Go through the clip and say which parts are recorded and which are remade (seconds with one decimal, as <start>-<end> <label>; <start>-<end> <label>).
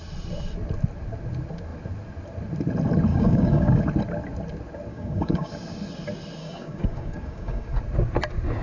0.0-3.1 recorded; 3.1-3.8 remade; 3.8-4.9 recorded; 4.9-5.5 remade; 5.5-6.4 recorded; 6.4-7.8 remade; 7.8-8.6 recorded